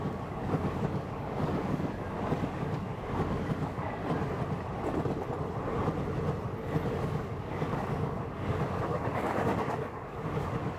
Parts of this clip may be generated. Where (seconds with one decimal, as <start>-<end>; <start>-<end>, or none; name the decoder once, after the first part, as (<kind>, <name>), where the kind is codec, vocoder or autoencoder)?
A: 0.0-4.0 (codec, DAC); 6.9-10.8